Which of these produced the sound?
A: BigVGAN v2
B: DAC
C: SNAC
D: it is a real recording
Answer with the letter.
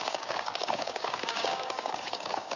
B